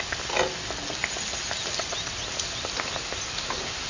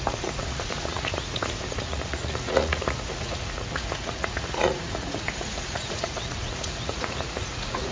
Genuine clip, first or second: first